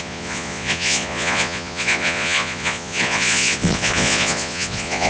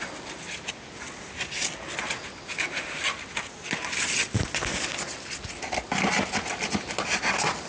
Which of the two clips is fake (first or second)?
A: first